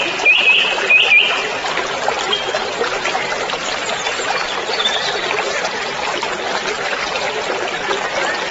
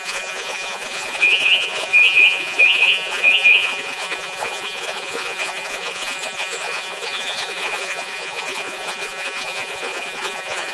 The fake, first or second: second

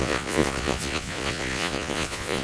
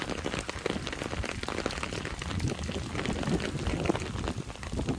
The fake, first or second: first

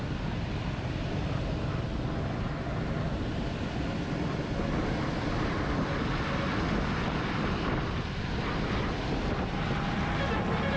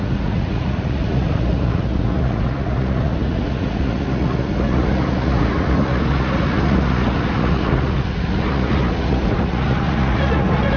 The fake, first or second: second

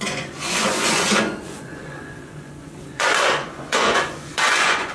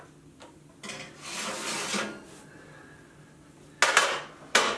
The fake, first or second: first